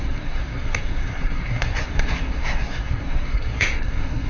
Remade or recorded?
remade